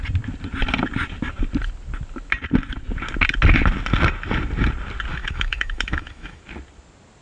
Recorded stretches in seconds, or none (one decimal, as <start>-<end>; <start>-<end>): 0.0-5.1; 6.4-7.2